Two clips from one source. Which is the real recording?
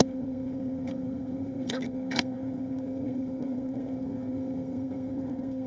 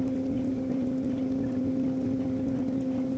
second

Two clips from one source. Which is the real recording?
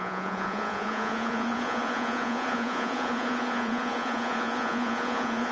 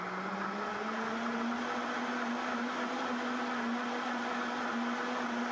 second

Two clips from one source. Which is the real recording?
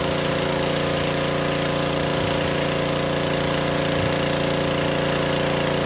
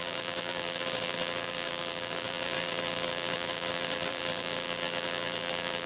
first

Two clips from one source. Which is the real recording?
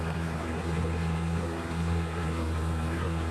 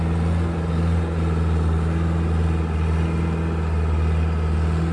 second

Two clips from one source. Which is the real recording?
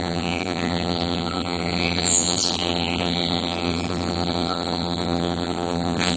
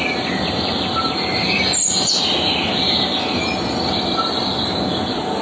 second